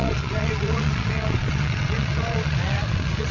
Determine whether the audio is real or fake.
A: fake